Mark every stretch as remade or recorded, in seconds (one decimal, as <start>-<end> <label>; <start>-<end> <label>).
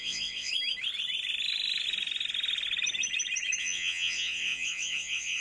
0.0-0.5 remade; 0.5-3.6 recorded; 3.6-5.4 remade